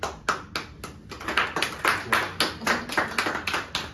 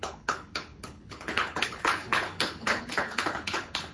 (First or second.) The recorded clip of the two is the first